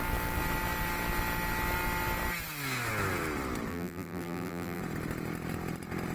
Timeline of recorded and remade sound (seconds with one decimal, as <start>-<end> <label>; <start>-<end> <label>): 0.0-3.7 recorded; 3.7-4.8 remade; 4.8-6.1 recorded